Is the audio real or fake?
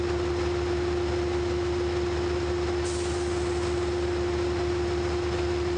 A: real